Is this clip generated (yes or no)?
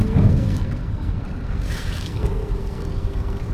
yes